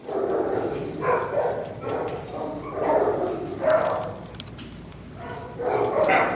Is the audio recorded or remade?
remade